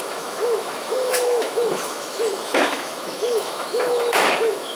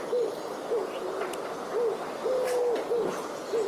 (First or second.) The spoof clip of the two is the first